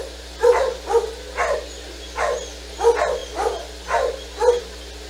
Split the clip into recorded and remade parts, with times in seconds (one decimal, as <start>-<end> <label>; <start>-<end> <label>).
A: 0.0-5.1 recorded